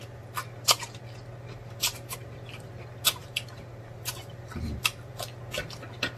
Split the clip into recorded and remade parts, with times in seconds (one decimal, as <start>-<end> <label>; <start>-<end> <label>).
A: 0.0-1.0 remade; 1.0-1.6 recorded; 1.6-2.7 remade; 2.7-3.2 recorded; 3.2-5.1 remade; 5.1-6.2 recorded